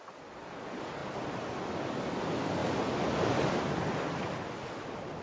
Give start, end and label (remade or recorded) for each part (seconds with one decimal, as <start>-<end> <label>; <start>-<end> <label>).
0.0-5.2 recorded